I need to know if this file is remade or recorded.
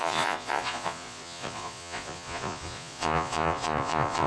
remade